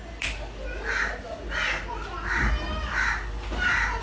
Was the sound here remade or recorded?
recorded